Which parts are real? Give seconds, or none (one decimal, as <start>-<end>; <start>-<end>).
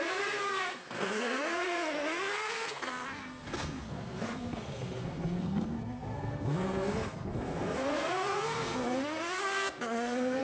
none